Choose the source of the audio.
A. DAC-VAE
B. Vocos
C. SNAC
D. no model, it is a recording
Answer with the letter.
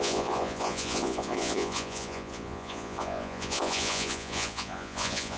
B